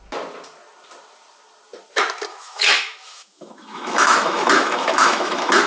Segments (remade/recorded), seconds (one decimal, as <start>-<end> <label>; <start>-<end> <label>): 0.0-2.3 recorded; 2.3-5.7 remade